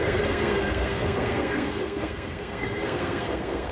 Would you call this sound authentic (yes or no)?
no